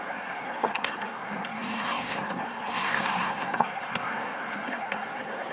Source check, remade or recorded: remade